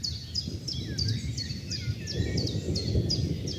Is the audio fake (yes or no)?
no